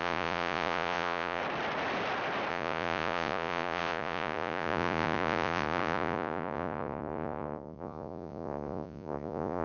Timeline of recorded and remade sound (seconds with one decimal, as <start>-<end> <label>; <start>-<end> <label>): 0.0-1.4 remade; 1.4-2.5 recorded; 2.5-9.6 remade